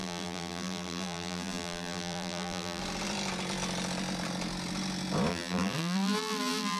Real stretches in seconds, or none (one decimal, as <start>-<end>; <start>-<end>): 2.8-5.3